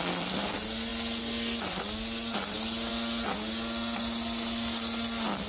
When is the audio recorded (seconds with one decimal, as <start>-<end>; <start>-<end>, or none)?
0.0-5.5

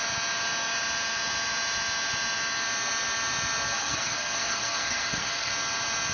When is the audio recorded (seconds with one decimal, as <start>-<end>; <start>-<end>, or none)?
0.0-3.8; 5.5-6.1

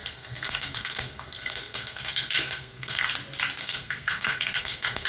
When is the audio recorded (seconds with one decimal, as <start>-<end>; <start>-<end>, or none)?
3.1-3.6

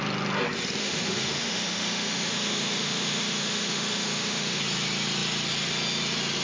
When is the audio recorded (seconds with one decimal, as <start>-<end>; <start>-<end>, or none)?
0.0-0.8; 4.6-6.4

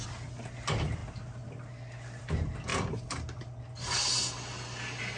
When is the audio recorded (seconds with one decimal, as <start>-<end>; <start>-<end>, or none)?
0.0-5.2